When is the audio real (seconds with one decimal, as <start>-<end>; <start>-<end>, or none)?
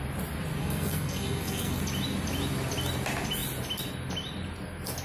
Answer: 0.0-0.6; 1.8-5.0